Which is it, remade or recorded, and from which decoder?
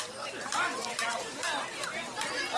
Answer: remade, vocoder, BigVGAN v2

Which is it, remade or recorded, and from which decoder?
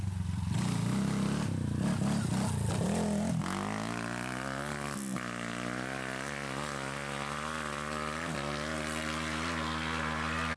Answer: recorded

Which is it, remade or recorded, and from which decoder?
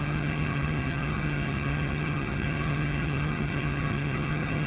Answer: remade, vocoder, HiFi-GAN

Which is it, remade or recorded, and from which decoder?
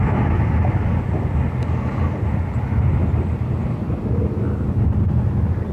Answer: recorded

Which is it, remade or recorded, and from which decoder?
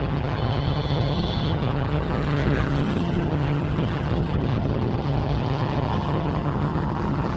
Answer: remade, vocoder, HiFi-GAN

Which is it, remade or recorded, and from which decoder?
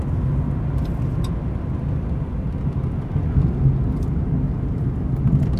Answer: recorded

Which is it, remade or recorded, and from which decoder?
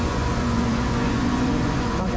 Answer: remade, vocoder, Vocos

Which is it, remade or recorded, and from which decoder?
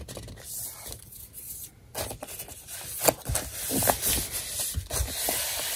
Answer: recorded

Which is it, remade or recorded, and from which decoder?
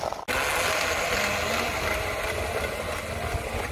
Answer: recorded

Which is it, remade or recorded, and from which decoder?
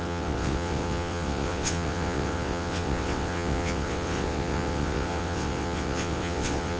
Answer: remade, vocoder, WaveNeXt